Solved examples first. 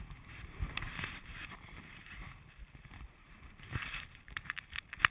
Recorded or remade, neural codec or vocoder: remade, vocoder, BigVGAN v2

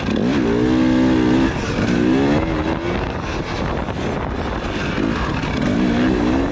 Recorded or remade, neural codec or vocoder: recorded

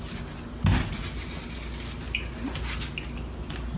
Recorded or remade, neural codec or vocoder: recorded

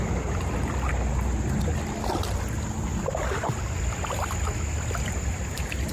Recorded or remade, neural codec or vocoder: recorded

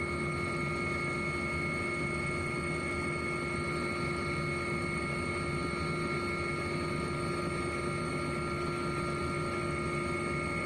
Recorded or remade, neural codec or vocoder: recorded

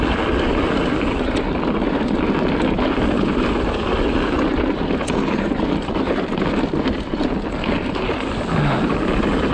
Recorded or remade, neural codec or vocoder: recorded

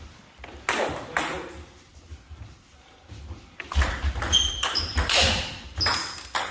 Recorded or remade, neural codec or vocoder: recorded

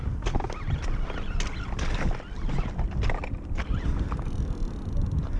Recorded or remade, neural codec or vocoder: recorded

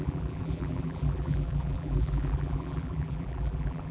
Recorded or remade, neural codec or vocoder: remade, vocoder, BigVGAN v2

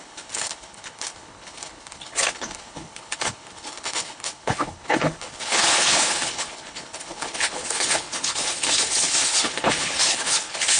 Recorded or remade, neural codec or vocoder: remade, codec, HILCodec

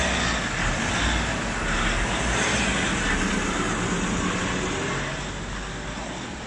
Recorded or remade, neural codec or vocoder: recorded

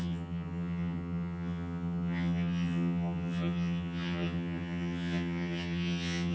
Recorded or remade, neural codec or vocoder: remade, vocoder, HiFi-GAN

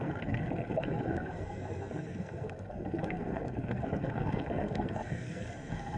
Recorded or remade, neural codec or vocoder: remade, codec, SNAC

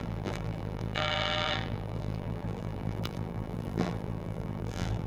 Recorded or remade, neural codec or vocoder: remade, vocoder, BigVGAN v2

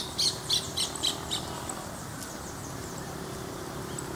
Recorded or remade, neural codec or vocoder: recorded